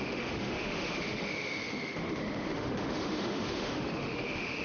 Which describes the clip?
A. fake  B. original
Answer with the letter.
A